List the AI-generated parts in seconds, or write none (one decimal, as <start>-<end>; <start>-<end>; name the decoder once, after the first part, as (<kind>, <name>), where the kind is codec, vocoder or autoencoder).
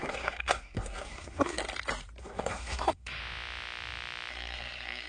0.0-1.6 (codec, SNAC); 2.2-3.2; 4.3-5.1